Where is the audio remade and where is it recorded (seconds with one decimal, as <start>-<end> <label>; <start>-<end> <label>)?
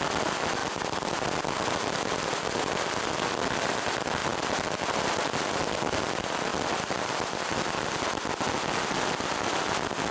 0.0-0.6 recorded; 0.6-1.4 remade; 1.4-4.2 recorded; 4.2-5.1 remade; 5.1-6.5 recorded; 6.5-7.4 remade; 7.4-10.1 recorded